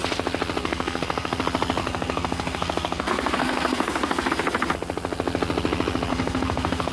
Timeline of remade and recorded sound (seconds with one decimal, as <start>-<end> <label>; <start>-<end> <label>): 0.0-0.6 recorded; 0.6-1.4 remade; 1.4-1.8 recorded; 1.8-4.3 remade; 4.3-6.1 recorded; 6.1-6.9 remade